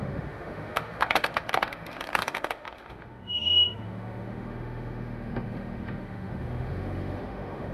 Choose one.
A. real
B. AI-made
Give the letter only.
B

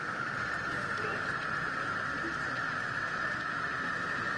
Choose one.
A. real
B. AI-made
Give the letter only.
A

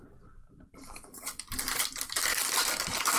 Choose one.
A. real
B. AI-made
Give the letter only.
B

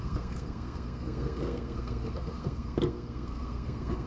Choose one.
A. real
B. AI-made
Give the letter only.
B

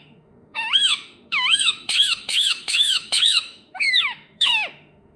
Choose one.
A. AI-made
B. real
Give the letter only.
A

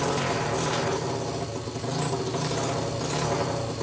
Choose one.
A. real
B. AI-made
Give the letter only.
A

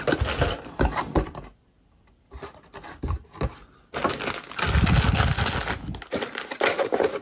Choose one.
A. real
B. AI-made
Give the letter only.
A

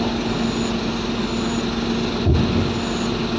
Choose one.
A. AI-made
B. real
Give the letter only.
B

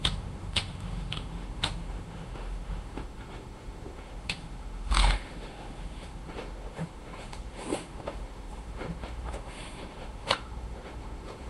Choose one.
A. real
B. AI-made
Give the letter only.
B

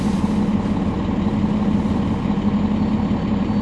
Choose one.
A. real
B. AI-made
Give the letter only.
A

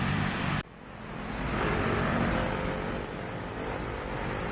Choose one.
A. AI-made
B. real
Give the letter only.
B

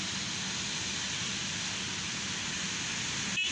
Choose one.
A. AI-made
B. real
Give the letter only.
B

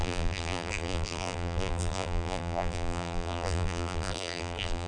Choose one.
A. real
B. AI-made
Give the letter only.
B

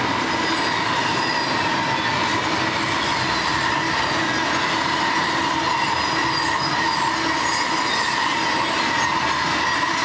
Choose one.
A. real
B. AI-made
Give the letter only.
A